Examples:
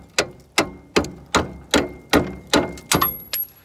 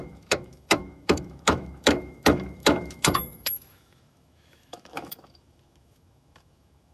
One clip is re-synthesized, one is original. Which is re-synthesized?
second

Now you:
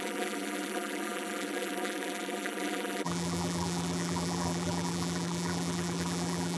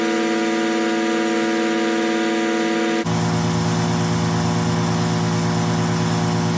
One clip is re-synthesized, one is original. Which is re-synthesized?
first